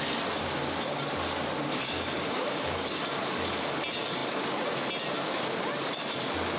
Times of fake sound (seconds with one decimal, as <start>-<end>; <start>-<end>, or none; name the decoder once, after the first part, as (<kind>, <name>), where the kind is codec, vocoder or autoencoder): 1.7-3.2 (codec, DAC)